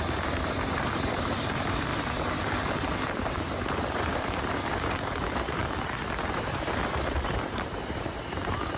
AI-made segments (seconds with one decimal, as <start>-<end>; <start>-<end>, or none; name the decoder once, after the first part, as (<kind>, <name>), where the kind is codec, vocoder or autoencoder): 0.0-1.9 (vocoder, BigVGAN v2); 3.1-5.6; 6.3-8.8